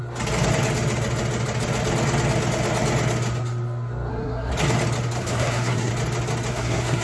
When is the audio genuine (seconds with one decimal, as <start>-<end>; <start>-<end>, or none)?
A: 0.0-4.1; 4.5-5.2; 5.9-6.5